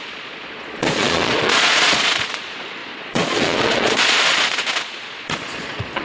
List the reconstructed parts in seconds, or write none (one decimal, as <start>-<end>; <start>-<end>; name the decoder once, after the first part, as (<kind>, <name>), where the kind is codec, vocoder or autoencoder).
0.0-6.0 (vocoder, Vocos)